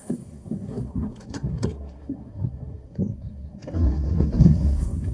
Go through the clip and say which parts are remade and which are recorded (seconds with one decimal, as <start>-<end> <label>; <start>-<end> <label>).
0.0-5.1 remade